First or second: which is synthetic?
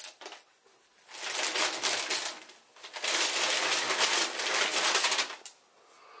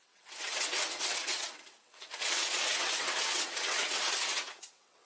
second